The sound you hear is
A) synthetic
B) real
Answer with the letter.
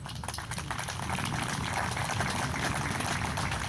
B